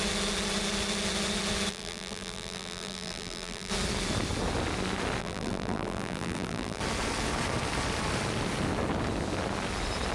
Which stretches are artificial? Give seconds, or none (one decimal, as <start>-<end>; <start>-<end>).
1.7-3.7; 5.2-6.8